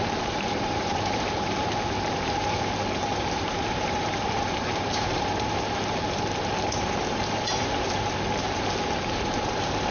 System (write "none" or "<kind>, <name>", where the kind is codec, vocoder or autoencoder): vocoder, BigVGAN v2